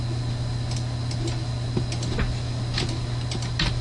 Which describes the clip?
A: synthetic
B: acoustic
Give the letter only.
B